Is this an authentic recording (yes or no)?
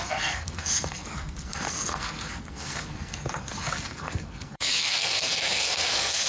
no